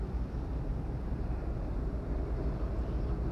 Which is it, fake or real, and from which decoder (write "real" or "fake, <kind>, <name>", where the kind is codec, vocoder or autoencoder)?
real